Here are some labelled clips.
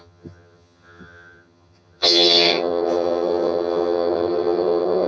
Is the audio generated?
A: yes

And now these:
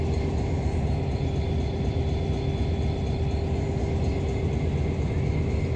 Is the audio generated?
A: no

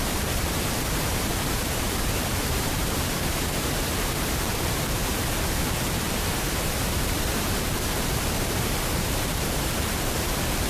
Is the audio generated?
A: yes